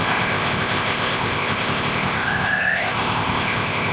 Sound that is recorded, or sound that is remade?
remade